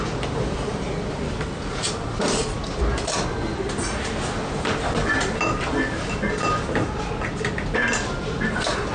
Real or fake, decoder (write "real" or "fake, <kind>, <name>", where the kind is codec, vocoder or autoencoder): real